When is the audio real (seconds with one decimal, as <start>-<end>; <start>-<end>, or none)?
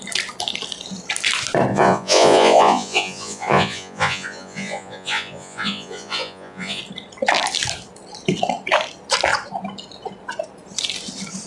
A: 0.0-1.7; 6.8-11.5